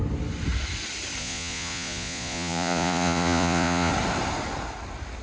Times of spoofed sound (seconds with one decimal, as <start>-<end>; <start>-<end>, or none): 1.2-3.9